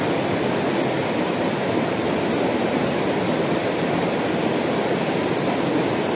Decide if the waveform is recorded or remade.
recorded